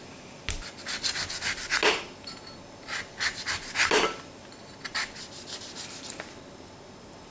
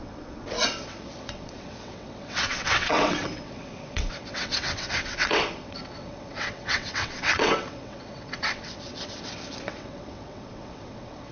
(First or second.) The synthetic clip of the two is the second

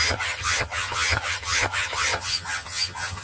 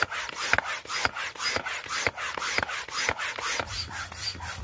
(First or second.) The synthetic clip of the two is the first